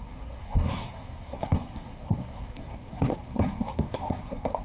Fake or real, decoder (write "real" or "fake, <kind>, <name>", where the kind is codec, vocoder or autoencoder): fake, codec, SNAC